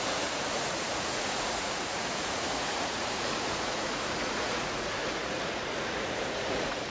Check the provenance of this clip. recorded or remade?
remade